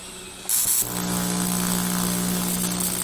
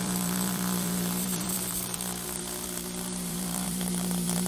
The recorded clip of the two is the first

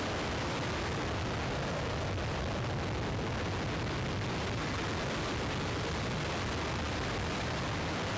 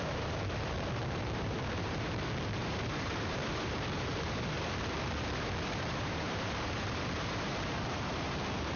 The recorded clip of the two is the first